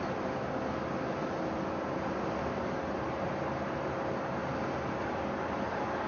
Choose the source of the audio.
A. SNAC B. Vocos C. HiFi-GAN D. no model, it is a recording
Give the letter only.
D